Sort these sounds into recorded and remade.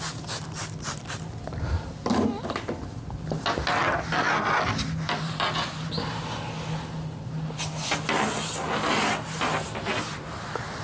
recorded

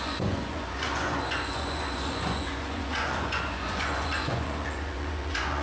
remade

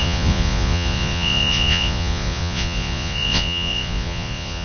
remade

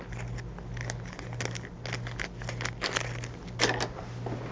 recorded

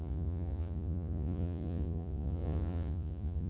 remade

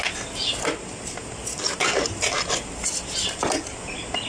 recorded